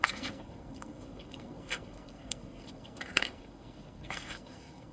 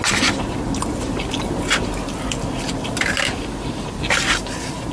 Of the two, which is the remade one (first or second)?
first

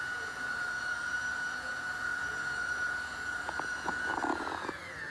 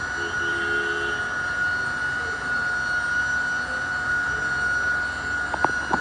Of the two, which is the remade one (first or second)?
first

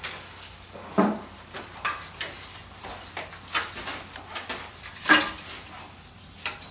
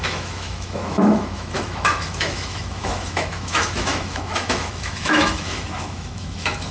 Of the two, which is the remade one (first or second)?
second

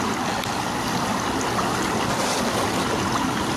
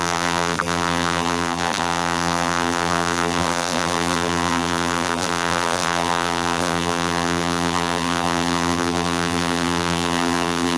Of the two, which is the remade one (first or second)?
second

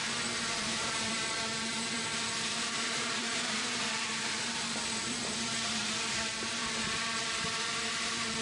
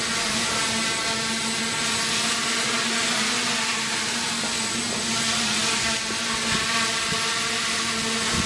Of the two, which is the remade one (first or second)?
first